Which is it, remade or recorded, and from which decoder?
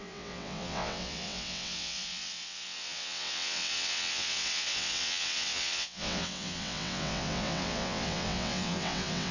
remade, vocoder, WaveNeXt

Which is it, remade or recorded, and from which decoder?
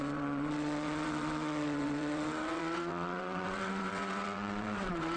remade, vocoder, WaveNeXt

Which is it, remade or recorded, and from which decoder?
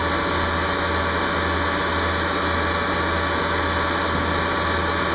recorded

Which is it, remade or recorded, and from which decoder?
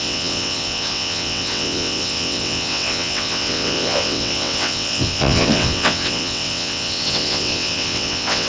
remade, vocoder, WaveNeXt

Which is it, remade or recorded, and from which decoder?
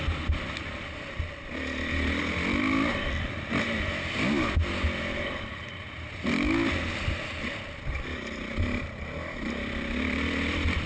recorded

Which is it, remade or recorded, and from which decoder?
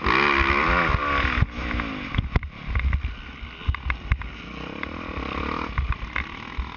recorded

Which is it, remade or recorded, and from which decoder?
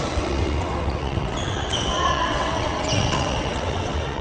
remade, vocoder, WaveNeXt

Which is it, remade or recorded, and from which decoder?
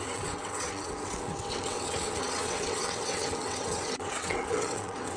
remade, vocoder, WaveNeXt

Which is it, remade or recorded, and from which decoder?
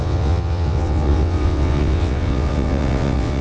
remade, vocoder, WaveNeXt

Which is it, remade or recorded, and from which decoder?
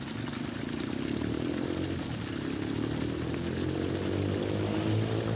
recorded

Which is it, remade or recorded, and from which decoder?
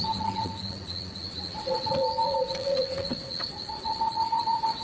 remade, vocoder, WaveNeXt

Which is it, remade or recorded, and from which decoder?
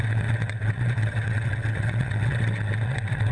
remade, vocoder, WaveNeXt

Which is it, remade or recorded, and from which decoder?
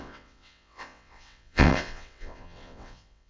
remade, vocoder, WaveNeXt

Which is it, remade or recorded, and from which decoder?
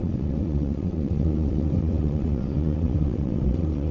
remade, vocoder, WaveNeXt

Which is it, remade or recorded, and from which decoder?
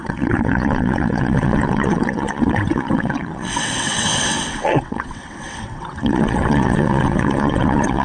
remade, vocoder, WaveNeXt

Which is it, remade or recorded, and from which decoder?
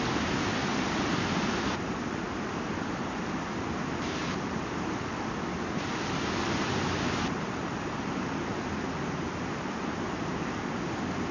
recorded